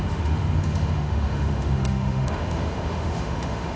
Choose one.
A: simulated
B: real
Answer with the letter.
A